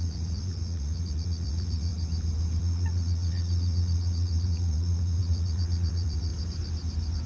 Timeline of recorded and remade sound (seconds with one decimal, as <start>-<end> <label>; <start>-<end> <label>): 0.0-1.9 remade; 1.9-2.6 recorded; 2.6-6.3 remade; 6.3-7.3 recorded